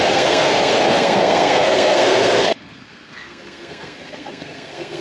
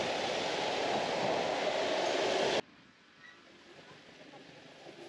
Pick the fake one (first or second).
first